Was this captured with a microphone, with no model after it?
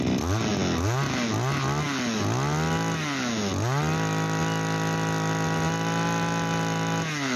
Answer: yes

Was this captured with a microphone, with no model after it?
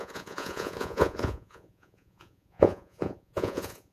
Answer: no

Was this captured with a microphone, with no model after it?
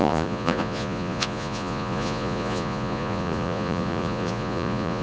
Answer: no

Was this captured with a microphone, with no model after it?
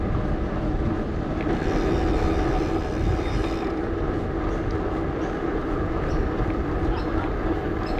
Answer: yes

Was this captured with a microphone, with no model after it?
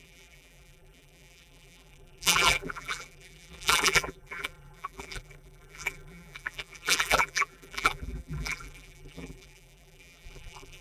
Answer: no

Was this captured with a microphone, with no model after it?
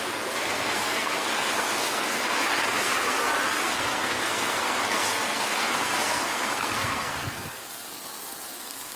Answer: no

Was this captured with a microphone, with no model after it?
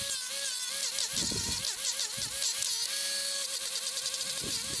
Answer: yes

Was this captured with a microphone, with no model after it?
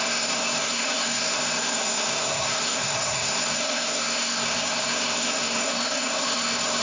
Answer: no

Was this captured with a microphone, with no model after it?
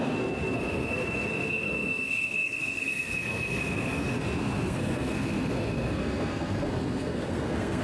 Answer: no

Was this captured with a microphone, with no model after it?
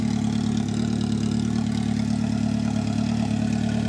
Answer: yes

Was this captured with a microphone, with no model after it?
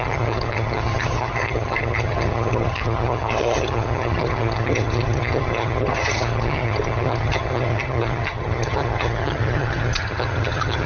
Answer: no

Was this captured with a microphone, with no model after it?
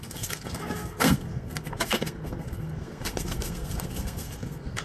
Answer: no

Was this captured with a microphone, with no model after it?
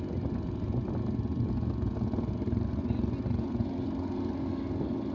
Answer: yes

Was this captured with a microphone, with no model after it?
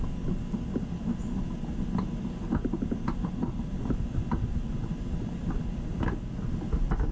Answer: yes